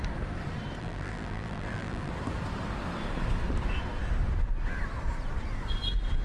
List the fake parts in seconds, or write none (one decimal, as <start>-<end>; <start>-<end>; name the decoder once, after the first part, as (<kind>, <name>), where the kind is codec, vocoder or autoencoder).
0.8-2.1 (vocoder, BigVGAN v2)